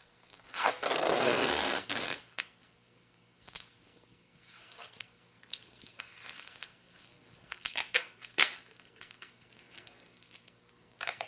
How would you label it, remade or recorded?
remade